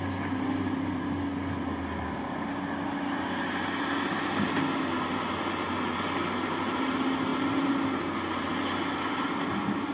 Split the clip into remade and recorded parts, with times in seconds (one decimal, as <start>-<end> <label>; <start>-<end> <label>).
0.0-9.9 recorded